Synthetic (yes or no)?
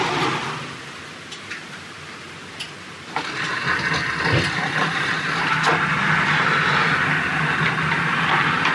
no